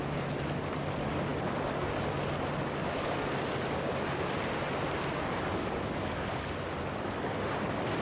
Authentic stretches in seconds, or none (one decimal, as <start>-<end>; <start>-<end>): 0.0-8.0